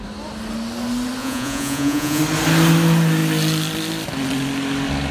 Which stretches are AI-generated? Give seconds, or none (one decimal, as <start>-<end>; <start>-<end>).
1.2-2.2